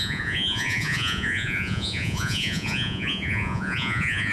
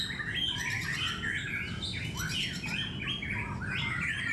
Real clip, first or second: second